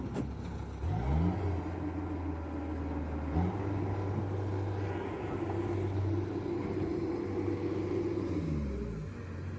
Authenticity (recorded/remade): recorded